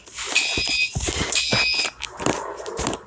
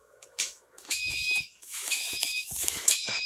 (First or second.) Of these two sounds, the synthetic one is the second